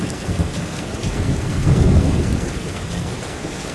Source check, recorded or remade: remade